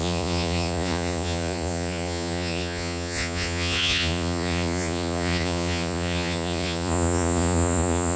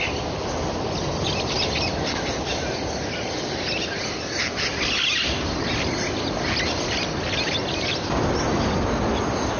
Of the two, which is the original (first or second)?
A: second